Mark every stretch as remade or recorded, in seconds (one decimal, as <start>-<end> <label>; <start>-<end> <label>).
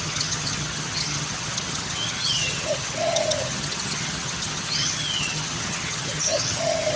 0.0-7.0 remade